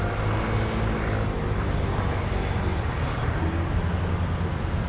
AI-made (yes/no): no